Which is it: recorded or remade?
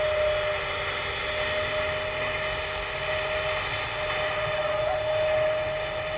recorded